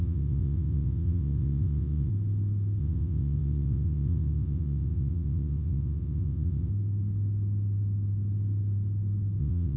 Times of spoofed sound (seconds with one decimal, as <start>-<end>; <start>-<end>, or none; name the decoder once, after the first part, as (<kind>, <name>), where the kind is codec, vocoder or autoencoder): 0.0-2.1 (vocoder, WaveNeXt); 2.8-6.7; 9.4-9.8